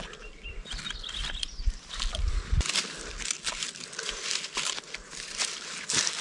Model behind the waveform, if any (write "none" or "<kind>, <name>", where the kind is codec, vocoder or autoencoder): none